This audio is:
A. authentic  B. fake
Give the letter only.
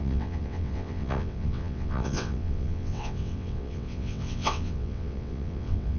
B